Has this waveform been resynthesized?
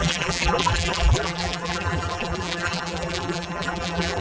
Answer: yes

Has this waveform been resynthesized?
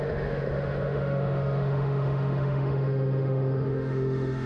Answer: yes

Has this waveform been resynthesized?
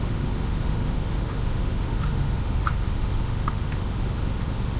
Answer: yes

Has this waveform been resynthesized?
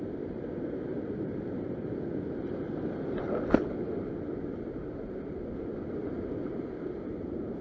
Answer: no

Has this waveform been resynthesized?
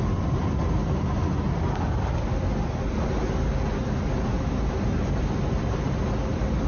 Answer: no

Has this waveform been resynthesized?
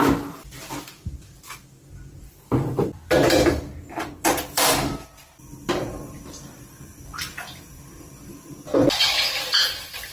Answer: yes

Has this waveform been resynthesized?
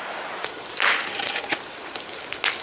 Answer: no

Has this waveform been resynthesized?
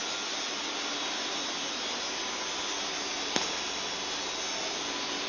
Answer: no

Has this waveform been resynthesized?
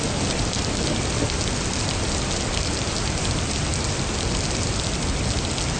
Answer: no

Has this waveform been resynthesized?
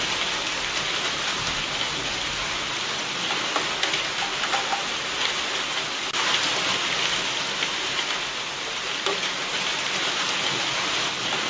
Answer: no